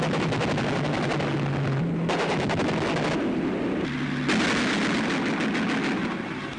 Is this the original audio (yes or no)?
yes